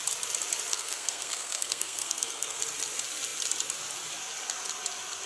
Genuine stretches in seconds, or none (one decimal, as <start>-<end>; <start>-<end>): 0.0-0.7; 2.6-5.3